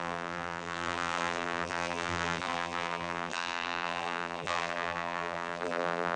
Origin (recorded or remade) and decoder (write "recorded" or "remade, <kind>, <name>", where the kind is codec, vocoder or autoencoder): remade, vocoder, BigVGAN v2